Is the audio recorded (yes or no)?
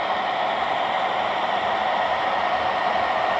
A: yes